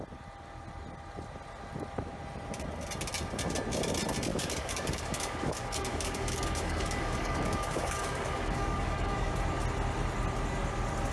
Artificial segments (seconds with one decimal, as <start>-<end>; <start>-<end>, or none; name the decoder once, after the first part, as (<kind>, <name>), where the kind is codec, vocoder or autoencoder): 4.3-9.3 (codec, DAC)